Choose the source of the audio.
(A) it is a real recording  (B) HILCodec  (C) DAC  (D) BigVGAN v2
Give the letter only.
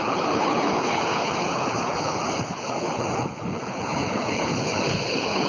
B